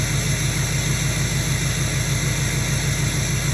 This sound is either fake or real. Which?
real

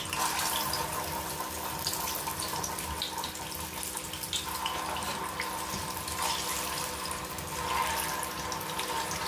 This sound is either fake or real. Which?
real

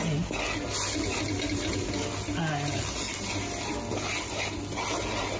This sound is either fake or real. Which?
real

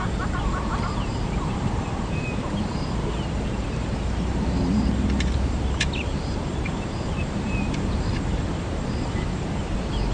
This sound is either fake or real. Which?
fake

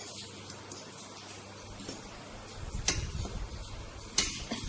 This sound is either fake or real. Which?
real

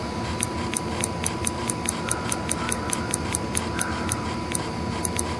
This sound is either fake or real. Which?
real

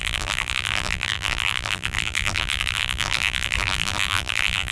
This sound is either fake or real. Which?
fake